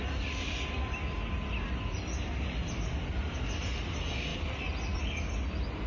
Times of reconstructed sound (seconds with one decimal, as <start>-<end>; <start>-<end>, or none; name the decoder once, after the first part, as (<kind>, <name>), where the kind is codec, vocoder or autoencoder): none